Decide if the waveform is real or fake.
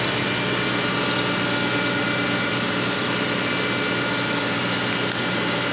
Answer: real